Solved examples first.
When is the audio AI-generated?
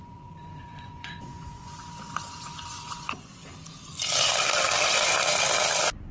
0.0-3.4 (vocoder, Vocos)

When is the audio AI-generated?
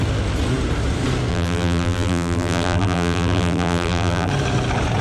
1.3-4.3 (vocoder, BigVGAN v2)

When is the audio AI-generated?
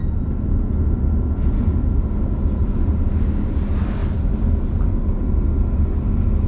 none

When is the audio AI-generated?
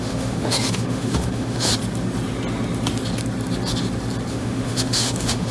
0.0-1.7 (autoencoder, DAC-VAE); 4.3-5.5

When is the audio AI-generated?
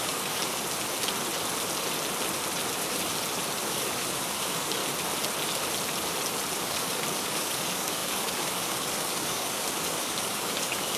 0.0-0.4 (codec, DAC); 3.6-4.8; 6.6-11.0